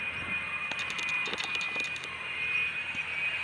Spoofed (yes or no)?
no